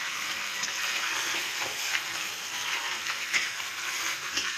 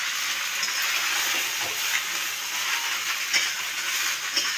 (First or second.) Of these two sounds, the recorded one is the second